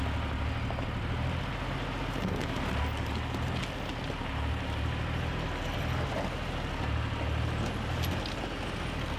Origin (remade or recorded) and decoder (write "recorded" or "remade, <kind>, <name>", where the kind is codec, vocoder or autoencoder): recorded